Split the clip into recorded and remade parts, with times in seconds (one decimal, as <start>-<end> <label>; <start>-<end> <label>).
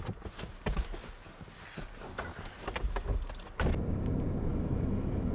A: 0.0-4.5 recorded; 4.5-5.3 remade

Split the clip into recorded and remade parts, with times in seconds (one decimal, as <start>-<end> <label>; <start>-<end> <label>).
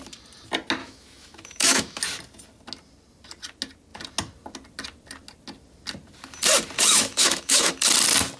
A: 0.0-0.8 recorded; 0.8-2.0 remade; 2.0-6.9 recorded; 6.9-7.7 remade; 7.7-8.4 recorded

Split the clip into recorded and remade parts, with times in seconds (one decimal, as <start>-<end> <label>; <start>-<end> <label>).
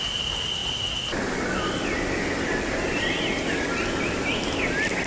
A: 0.0-5.1 recorded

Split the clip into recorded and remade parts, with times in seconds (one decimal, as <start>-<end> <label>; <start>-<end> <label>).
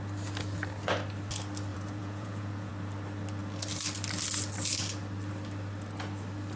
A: 0.0-1.7 recorded; 1.7-2.7 remade; 2.7-6.6 recorded